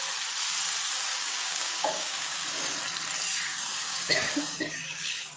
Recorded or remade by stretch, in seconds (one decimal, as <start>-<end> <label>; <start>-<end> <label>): 0.0-1.1 recorded; 1.1-2.5 remade; 2.5-3.5 recorded; 3.5-5.4 remade